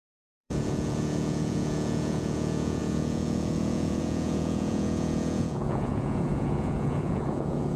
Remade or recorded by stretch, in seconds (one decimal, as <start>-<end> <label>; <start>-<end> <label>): 0.0-7.8 remade